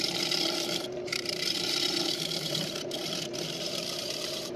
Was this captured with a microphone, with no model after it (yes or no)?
no